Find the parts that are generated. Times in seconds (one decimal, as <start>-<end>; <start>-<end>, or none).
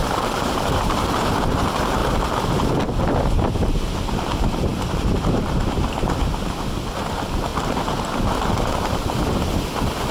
0.0-1.3; 7.5-8.3